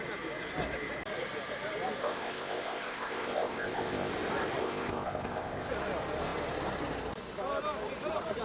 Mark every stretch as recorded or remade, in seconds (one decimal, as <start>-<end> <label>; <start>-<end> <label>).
0.0-2.0 recorded; 2.0-4.1 remade; 4.1-4.6 recorded; 4.6-5.7 remade; 5.7-8.4 recorded